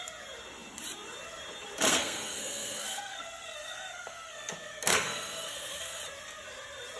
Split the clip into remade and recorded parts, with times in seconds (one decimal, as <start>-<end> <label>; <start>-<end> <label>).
0.0-1.9 recorded; 1.9-6.0 remade; 6.0-7.0 recorded